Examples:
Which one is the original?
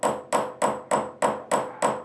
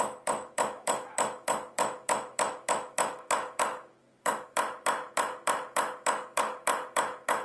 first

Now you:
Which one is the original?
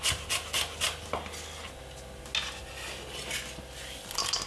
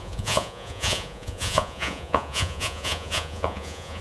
first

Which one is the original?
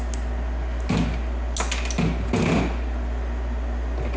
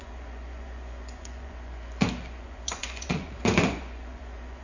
first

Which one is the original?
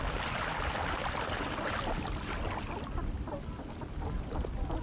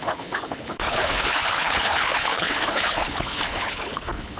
first